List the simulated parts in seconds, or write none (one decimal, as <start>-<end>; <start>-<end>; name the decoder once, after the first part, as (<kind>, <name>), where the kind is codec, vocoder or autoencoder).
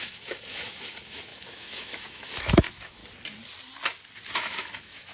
0.0-3.0 (autoencoder, DAC-VAE); 4.3-5.1